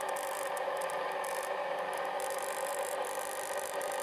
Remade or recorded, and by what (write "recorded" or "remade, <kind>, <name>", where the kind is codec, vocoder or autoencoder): recorded